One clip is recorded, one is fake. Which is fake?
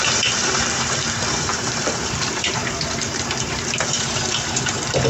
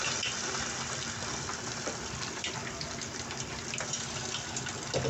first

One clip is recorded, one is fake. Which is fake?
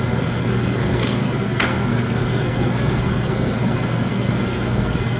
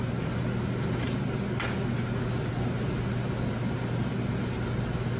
first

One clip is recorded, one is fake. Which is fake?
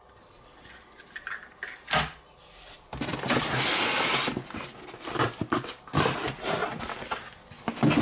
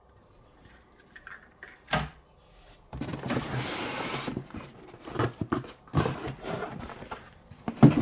second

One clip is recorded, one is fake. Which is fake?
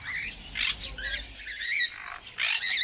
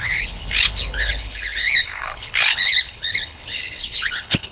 second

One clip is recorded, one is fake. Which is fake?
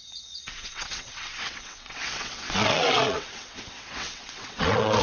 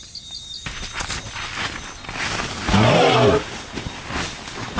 first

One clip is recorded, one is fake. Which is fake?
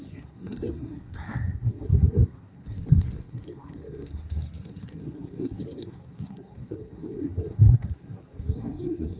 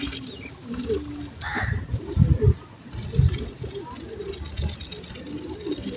first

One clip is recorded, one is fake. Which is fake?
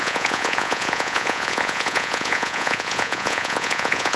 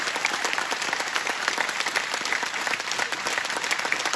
first